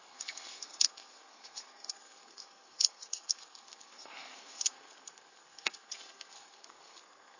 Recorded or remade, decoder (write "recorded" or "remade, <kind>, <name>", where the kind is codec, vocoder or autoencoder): remade, codec, SNAC